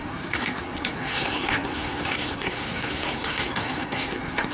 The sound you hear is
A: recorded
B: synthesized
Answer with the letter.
B